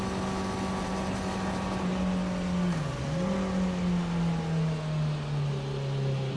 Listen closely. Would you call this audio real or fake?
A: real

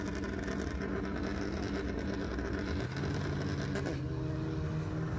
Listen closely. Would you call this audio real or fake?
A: real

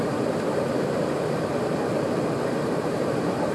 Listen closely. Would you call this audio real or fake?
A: fake